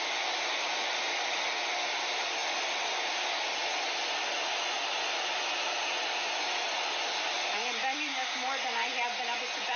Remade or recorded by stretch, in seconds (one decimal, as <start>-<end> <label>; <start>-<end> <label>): 0.0-9.8 recorded